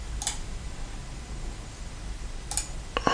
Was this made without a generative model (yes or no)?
yes